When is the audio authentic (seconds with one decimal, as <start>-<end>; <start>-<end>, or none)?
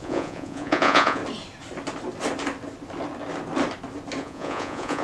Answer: 1.2-4.2